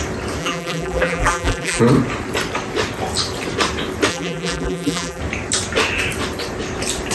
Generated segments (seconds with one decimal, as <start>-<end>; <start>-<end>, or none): 0.4-1.8; 4.1-5.2